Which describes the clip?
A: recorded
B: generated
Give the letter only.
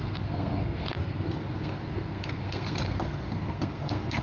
B